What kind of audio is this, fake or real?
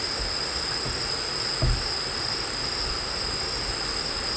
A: real